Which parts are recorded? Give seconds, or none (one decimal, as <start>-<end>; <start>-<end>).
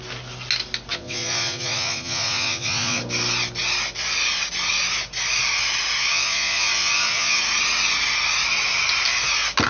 0.0-0.9; 3.0-6.1; 7.4-9.7